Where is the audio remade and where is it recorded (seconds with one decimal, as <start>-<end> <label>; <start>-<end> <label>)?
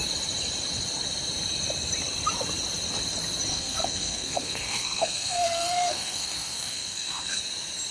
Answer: 0.0-3.5 recorded; 3.5-7.4 remade; 7.4-7.9 recorded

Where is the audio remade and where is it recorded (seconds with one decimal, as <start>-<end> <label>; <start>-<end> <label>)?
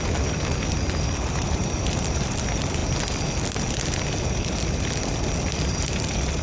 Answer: 0.0-6.4 recorded